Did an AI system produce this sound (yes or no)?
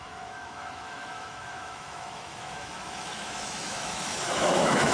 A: yes